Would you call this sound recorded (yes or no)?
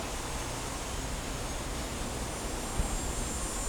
yes